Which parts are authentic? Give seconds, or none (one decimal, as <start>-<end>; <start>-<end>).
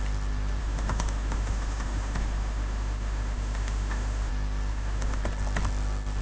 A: 0.0-0.6; 4.3-4.7; 5.2-6.2